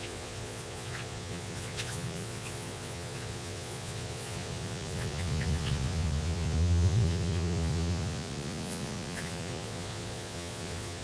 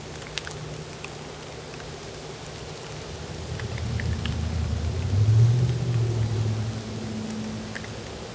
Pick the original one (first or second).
second